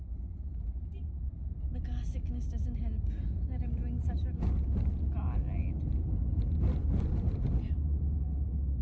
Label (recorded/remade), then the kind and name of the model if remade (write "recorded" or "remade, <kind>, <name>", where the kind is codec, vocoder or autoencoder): recorded